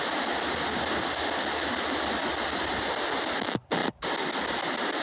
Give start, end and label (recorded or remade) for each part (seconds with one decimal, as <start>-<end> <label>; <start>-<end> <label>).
0.0-2.2 recorded; 2.2-2.8 remade; 2.8-5.0 recorded